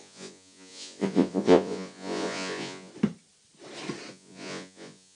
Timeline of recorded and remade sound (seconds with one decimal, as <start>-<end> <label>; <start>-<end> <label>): 0.0-2.9 remade; 2.9-4.1 recorded; 4.1-5.1 remade